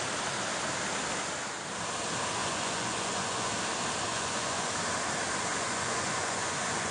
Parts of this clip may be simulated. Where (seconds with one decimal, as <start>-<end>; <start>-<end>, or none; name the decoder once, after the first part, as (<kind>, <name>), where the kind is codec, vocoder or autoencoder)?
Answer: 2.4-3.5 (vocoder, Vocos); 4.1-4.7; 5.5-6.9